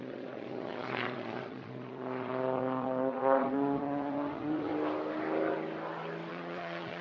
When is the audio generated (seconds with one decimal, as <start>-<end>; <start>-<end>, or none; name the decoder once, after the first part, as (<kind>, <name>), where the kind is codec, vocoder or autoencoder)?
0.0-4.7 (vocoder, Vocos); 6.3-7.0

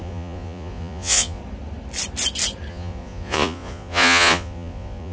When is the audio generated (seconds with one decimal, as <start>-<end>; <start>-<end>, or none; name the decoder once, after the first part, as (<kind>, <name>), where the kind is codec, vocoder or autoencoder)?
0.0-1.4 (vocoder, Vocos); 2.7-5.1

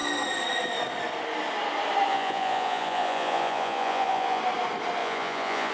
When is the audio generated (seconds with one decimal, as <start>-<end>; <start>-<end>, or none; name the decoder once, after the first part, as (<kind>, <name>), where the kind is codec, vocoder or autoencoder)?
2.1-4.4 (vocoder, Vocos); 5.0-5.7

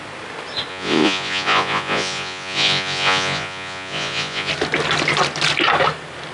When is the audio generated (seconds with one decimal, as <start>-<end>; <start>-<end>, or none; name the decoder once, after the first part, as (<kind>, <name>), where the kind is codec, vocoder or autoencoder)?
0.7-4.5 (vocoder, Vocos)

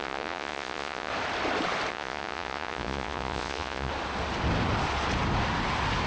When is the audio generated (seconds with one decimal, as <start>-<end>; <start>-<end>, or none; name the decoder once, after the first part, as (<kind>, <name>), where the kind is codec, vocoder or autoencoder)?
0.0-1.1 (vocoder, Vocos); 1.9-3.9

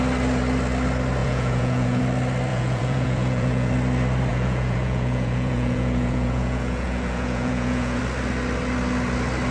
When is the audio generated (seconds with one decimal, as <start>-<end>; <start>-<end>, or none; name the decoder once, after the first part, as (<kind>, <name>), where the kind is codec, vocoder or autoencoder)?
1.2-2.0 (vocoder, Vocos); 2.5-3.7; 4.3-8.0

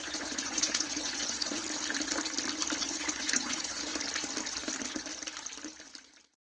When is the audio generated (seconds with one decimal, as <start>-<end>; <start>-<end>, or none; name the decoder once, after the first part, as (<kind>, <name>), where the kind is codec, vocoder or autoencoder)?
0.0-1.6 (vocoder, Vocos); 2.8-3.9

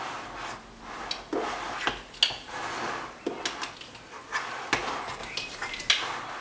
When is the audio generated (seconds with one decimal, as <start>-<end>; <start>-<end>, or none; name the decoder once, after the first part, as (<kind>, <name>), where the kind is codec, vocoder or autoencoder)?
none